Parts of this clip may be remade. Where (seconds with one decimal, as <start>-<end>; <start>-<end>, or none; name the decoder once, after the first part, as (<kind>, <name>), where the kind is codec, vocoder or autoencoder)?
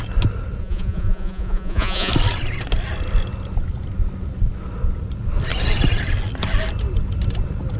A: 0.6-2.1 (vocoder, Vocos)